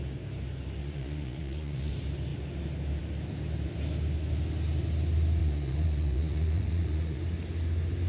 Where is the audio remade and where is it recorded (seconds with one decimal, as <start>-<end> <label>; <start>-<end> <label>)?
0.0-0.8 recorded; 0.8-1.9 remade; 1.9-5.4 recorded; 5.4-7.2 remade; 7.2-8.1 recorded